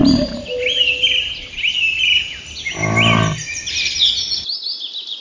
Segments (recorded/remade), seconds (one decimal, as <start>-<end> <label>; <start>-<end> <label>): 0.0-5.2 recorded